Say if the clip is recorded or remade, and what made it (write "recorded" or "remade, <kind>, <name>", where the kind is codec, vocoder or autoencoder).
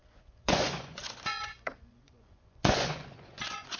remade, vocoder, Vocos